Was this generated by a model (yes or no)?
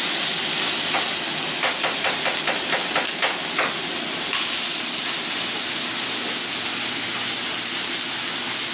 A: no